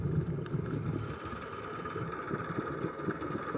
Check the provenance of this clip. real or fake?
real